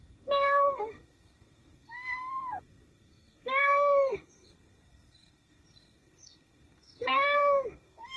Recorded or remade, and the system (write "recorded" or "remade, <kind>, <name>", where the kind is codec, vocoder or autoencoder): remade, codec, SNAC